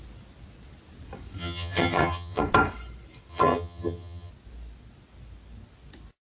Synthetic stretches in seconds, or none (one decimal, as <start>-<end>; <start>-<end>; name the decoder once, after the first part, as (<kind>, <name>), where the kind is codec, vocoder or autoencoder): 1.4-2.4 (vocoder, HiFi-GAN); 3.3-4.3